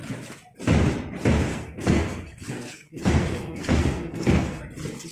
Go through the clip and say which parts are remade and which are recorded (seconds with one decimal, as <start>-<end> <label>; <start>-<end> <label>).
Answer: 0.0-1.5 recorded; 1.5-4.6 remade; 4.6-5.1 recorded